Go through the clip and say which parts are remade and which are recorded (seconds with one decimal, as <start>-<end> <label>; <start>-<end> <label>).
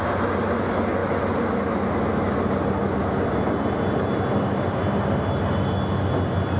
0.0-6.6 recorded